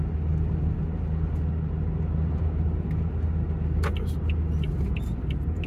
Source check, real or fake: real